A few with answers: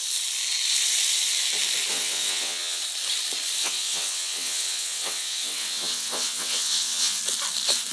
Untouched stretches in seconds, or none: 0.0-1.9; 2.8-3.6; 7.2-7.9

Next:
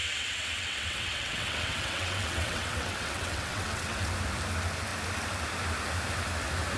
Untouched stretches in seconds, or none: 4.1-6.8

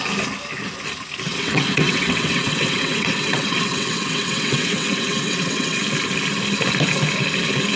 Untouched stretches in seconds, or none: 0.0-1.3; 5.8-7.8